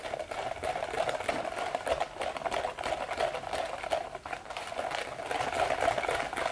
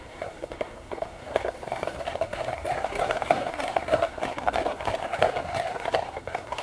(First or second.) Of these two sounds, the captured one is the first